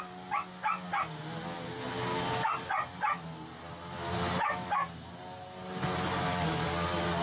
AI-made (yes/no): no